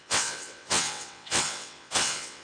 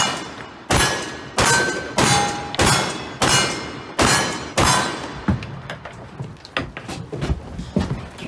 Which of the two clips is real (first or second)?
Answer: second